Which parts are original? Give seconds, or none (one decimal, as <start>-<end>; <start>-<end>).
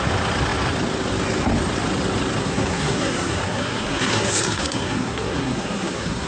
0.0-2.4